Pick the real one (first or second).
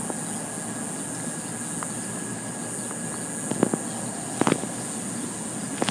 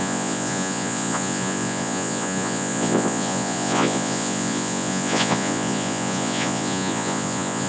first